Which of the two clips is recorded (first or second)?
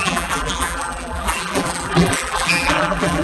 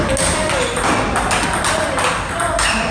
second